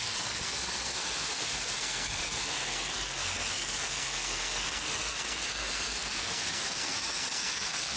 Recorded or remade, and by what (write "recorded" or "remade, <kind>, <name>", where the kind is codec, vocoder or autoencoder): remade, codec, SNAC